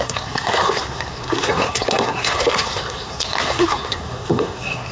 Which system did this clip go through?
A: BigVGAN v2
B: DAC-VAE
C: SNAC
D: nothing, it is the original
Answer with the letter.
C